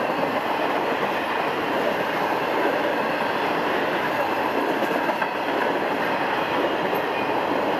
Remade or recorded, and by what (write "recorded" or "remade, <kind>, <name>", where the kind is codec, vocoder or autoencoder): recorded